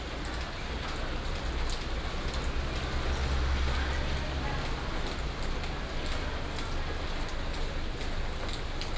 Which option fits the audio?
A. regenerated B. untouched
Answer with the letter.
B